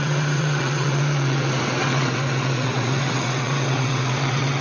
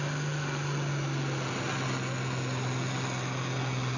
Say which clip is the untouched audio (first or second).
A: second